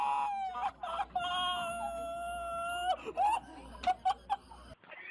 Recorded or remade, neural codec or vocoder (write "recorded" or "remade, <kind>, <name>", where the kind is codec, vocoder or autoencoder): recorded